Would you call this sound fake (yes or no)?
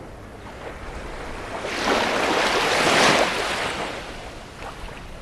no